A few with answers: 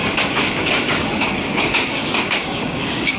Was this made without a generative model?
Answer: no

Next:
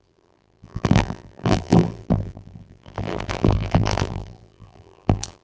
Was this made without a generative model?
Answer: no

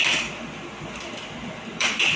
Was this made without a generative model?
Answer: no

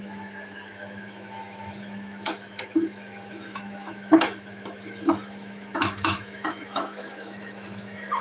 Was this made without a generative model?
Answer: no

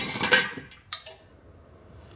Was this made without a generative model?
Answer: no